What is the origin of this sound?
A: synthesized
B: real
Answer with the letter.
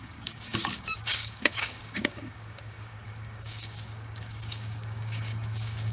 A